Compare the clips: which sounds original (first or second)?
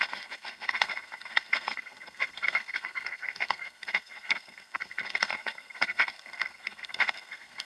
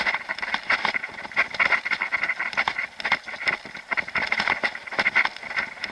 second